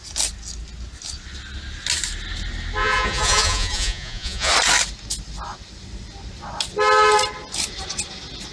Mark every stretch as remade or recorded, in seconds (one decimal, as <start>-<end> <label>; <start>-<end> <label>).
0.0-2.8 recorded; 2.8-4.5 remade; 4.5-8.5 recorded